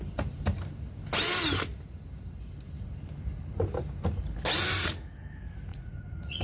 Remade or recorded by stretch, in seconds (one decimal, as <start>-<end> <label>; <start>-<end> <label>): 0.0-5.7 recorded; 5.7-6.4 remade